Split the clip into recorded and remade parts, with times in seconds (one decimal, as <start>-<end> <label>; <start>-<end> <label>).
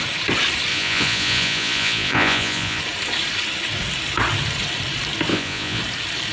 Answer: 0.0-0.7 recorded; 0.7-2.8 remade; 2.8-5.3 recorded; 5.3-5.8 remade; 5.8-6.3 recorded